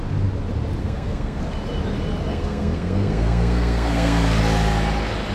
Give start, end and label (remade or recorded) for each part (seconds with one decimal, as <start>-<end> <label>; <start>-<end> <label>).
0.0-0.8 recorded; 0.8-1.4 remade; 1.4-2.3 recorded; 2.3-4.4 remade; 4.4-5.3 recorded